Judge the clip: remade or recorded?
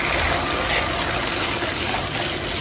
recorded